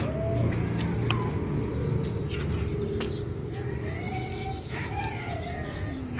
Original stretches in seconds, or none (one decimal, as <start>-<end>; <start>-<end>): 0.0-4.3; 5.0-6.2